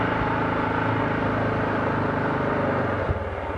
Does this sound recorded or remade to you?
recorded